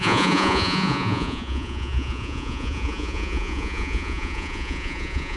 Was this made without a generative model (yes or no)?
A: no